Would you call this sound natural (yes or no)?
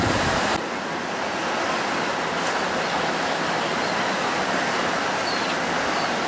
yes